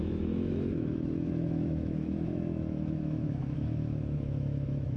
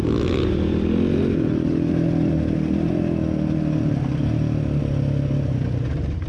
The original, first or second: second